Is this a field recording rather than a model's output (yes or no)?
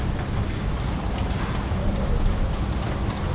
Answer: yes